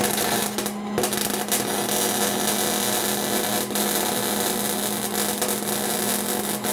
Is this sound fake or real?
real